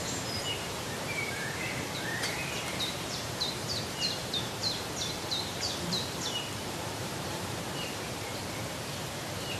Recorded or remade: remade